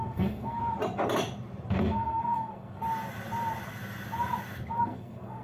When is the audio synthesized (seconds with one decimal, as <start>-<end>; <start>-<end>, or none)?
0.0-0.6; 1.7-2.8; 4.8-5.4